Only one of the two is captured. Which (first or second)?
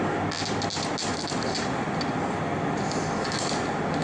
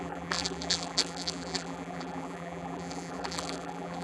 first